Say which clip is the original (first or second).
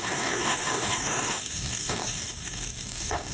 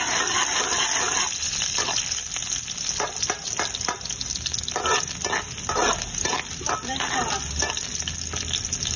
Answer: second